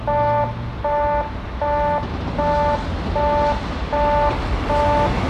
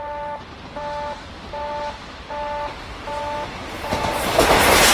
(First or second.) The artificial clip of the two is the second